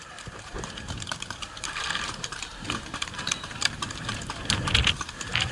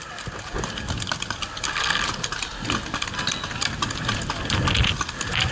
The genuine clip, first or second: second